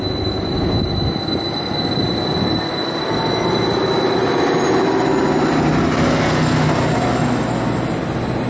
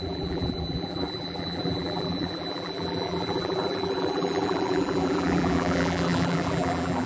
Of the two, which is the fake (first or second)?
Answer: second